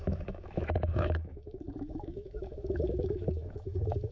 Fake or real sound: fake